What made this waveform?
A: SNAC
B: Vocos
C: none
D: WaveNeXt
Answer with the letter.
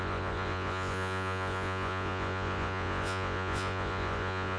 B